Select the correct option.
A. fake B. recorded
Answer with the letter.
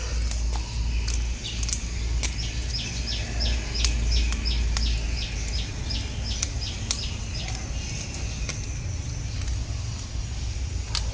B